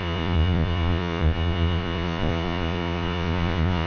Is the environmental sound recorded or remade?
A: remade